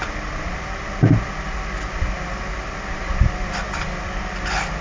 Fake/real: real